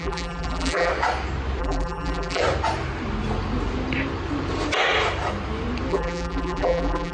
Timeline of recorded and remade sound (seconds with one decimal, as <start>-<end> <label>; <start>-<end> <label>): 0.0-0.9 remade; 0.9-1.6 recorded; 1.6-2.4 remade; 2.4-5.9 recorded; 5.9-7.1 remade